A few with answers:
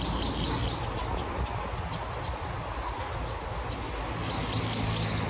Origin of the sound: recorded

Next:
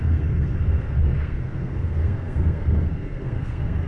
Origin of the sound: remade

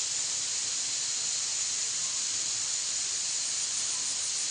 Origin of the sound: recorded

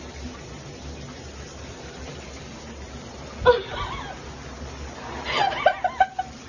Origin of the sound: recorded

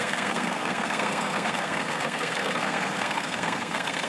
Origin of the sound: remade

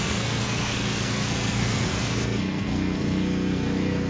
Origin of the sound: remade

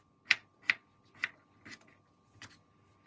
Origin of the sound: recorded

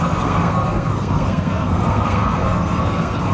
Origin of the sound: remade